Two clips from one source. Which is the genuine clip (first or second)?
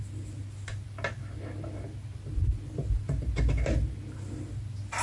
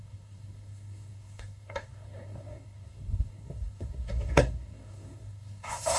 first